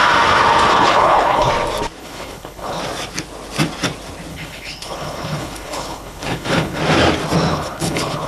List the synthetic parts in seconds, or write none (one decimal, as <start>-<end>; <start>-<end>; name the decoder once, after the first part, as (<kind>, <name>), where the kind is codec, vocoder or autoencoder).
0.7-1.5 (codec, HILCodec); 2.0-2.8; 4.3-6.8; 7.5-8.3